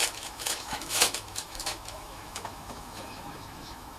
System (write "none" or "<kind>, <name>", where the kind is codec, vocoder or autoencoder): autoencoder, DAC-VAE